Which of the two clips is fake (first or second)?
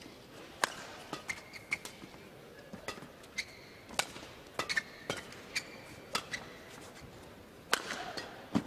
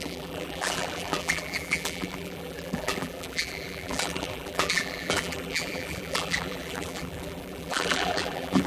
second